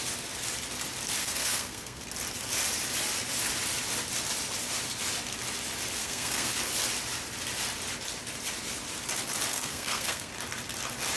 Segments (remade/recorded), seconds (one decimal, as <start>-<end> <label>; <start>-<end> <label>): 0.0-1.2 recorded; 1.2-2.0 remade; 2.0-6.0 recorded; 6.0-6.6 remade; 6.6-9.5 recorded; 9.5-10.3 remade; 10.3-11.2 recorded